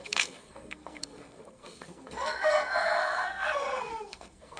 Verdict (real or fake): fake